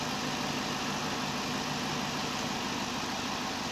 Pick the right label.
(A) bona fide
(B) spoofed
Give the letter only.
A